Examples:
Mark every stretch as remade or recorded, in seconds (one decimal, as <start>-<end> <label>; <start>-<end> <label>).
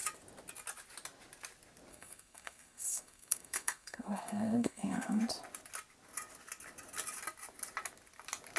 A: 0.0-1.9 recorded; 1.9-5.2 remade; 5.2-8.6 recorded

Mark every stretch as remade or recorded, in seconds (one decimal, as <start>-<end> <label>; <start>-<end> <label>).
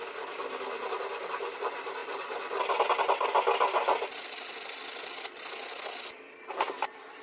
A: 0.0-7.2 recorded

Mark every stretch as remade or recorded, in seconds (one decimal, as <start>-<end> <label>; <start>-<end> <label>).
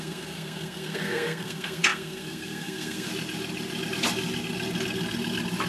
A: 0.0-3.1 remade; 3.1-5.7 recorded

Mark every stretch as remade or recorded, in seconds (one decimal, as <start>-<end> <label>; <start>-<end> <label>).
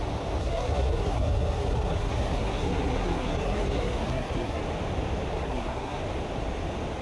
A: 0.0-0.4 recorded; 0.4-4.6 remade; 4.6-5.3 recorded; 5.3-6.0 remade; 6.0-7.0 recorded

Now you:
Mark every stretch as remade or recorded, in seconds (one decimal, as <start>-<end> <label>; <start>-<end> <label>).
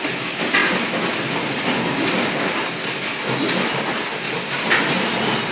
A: 0.0-5.5 recorded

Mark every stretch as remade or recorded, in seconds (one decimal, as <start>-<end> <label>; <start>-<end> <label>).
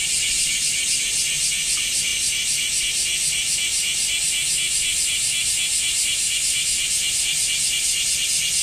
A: 0.0-8.6 recorded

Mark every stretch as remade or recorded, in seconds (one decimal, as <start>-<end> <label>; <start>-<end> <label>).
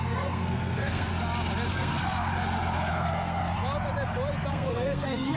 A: 0.0-1.1 remade; 1.1-1.7 recorded; 1.7-2.3 remade; 2.3-2.9 recorded; 2.9-3.4 remade; 3.4-4.5 recorded; 4.5-5.4 remade